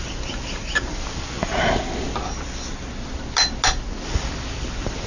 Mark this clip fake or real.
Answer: real